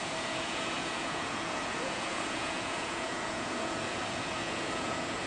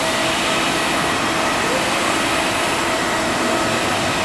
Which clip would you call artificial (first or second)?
first